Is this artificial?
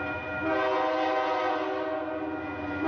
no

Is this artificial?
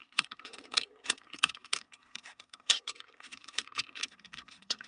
yes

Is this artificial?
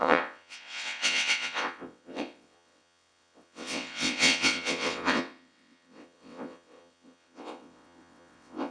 yes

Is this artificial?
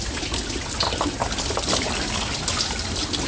no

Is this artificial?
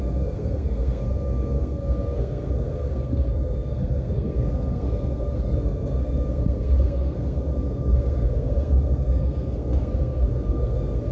yes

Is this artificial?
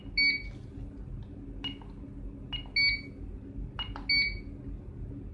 no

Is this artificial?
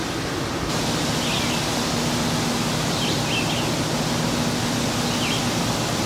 no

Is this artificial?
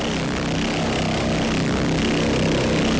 no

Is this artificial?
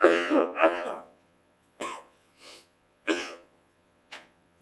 yes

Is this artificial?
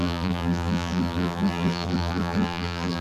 yes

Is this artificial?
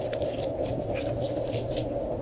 no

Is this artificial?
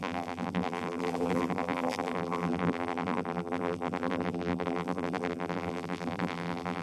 yes